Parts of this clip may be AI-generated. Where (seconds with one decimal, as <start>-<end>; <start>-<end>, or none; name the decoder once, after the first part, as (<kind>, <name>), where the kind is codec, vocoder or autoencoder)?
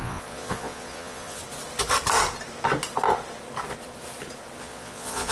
0.0-1.4 (vocoder, Vocos); 4.6-5.3